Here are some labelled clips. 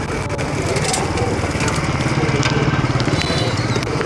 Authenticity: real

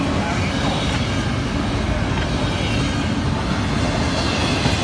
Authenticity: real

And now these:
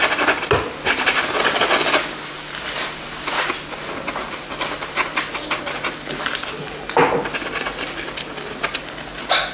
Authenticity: real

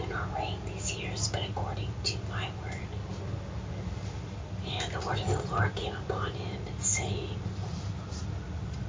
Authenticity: real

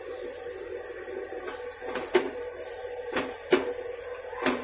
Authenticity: real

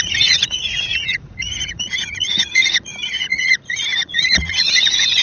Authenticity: fake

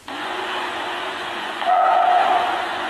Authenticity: fake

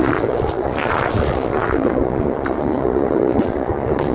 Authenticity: fake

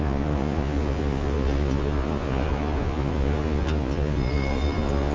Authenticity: fake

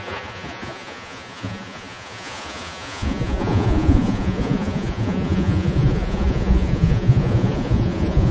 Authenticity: fake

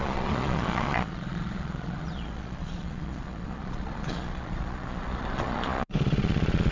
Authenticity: fake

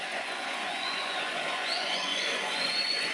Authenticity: fake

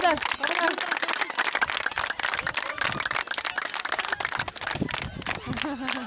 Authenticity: real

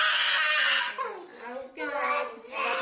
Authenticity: real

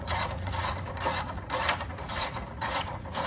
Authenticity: fake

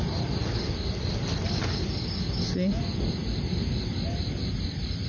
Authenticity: real